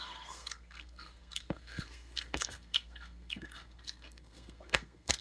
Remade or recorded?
remade